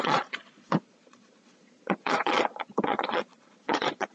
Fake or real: fake